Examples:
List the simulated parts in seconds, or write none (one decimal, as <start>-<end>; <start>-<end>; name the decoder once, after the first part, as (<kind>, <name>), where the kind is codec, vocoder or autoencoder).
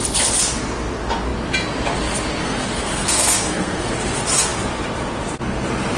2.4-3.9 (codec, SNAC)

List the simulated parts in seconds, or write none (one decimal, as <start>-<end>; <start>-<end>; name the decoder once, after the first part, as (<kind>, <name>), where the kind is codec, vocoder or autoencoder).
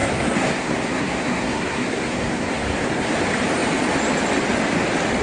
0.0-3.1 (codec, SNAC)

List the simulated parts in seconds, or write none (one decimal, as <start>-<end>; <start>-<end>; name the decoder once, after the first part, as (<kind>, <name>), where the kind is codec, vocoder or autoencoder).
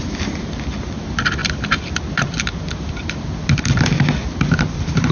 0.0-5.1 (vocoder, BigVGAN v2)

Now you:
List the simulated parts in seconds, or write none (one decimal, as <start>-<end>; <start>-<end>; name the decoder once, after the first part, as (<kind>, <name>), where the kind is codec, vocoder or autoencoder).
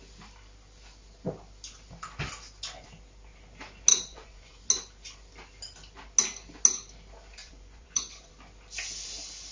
3.9-4.6 (vocoder, Vocos); 7.4-8.3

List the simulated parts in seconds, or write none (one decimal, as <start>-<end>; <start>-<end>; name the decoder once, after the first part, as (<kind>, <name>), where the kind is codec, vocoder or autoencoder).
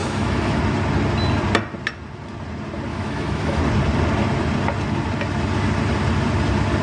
0.0-0.6 (autoencoder, DAC-VAE); 2.9-3.6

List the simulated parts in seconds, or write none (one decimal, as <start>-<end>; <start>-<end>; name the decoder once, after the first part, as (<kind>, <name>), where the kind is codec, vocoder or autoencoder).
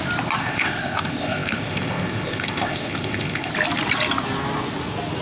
0.4-3.5 (codec, ZipCodec)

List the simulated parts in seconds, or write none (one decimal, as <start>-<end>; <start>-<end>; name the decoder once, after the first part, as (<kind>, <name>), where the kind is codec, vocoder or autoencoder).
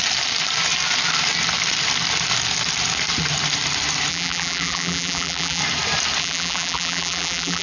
4.1-5.6 (vocoder, BigVGAN v2); 6.2-7.6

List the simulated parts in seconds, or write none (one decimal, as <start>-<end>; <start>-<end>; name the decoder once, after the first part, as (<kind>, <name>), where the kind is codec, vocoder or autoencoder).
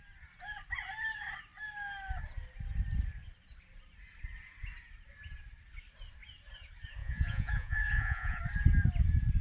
7.0-8.4 (vocoder, Vocos)